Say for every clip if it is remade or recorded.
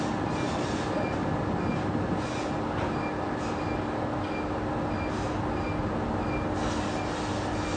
recorded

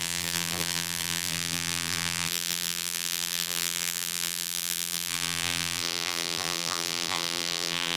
remade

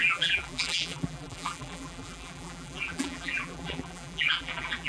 remade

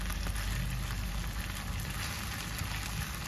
recorded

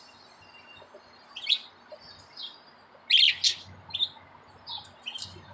recorded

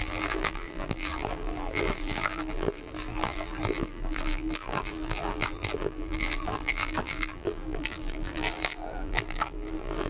remade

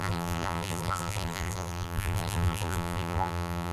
remade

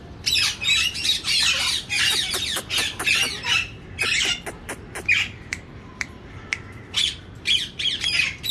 remade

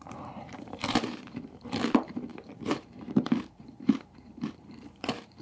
remade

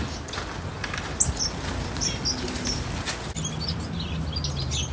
recorded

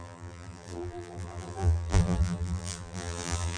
remade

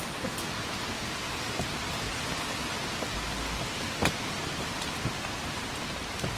recorded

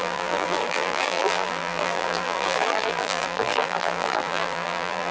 remade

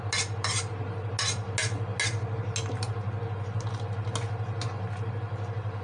recorded